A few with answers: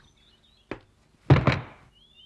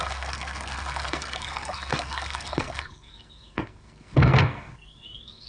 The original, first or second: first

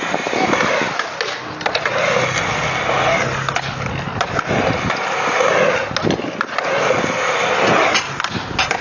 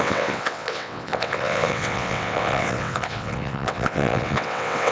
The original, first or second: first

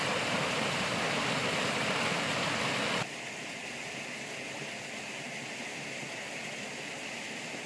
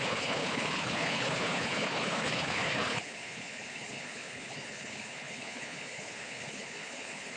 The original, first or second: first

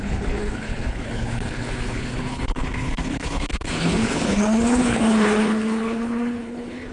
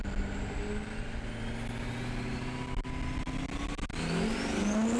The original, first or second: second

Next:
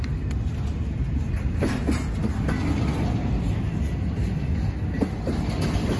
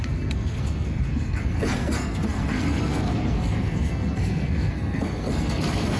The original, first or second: first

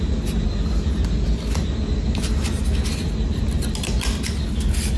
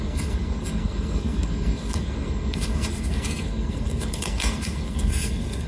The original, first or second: first